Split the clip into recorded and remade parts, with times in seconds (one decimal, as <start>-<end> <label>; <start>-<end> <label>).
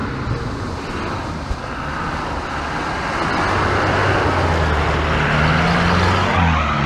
0.0-6.9 recorded